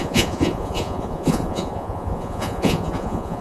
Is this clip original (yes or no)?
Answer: no